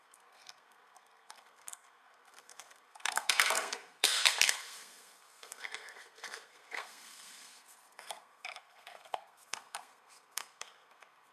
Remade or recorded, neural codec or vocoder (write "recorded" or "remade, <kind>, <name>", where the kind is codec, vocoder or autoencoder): remade, codec, SNAC